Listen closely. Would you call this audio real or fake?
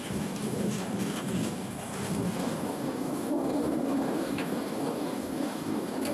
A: fake